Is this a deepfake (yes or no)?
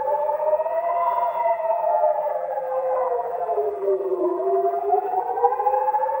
yes